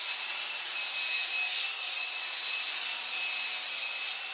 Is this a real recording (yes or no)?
yes